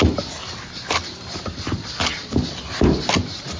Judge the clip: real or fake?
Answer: real